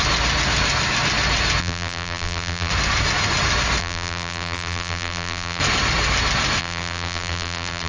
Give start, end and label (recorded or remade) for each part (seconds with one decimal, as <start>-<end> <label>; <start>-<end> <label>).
0.0-1.6 recorded; 1.6-2.7 remade; 2.7-3.8 recorded; 3.8-5.6 remade; 5.6-6.6 recorded; 6.6-7.9 remade